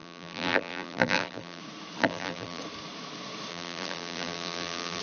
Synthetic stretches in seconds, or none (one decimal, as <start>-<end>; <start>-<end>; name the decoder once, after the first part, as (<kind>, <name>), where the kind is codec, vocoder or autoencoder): 0.0-1.6 (vocoder, BigVGAN v2); 2.0-2.6; 3.5-5.0